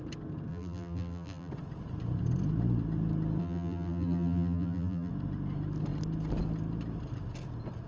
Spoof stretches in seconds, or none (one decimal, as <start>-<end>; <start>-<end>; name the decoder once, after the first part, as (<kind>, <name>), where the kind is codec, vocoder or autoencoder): 0.5-1.5 (vocoder, BigVGAN v2); 3.4-5.1